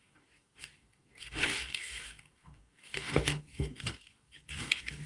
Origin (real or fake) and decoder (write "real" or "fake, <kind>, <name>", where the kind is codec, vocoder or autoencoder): fake, codec, DAC